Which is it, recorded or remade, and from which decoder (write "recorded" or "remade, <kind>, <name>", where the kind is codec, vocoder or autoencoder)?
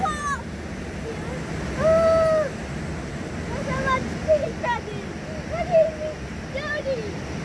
recorded